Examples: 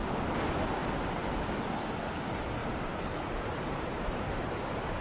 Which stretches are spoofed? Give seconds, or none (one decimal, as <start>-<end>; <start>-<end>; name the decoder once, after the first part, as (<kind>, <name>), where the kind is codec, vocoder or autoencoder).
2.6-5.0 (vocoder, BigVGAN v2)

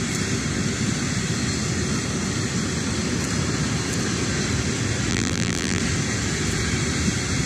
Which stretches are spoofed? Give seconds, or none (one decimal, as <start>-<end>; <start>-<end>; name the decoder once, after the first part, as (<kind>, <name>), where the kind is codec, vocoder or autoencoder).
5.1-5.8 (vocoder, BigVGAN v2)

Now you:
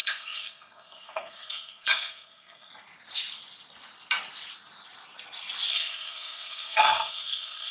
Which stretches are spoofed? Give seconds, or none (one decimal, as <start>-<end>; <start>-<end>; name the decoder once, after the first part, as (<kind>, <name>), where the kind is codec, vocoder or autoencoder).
0.0-2.7 (codec, SNAC); 5.7-7.7